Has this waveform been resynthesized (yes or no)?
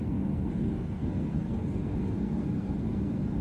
yes